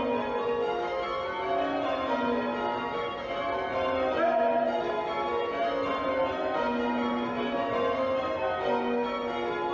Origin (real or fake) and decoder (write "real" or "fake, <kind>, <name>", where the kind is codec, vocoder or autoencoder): real